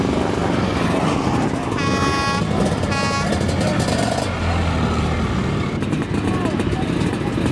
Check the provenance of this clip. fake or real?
real